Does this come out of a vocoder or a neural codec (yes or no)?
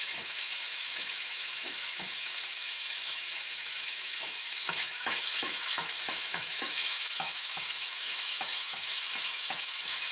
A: yes